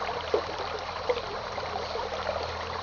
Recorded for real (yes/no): yes